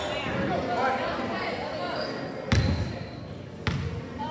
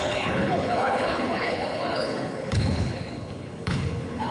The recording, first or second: first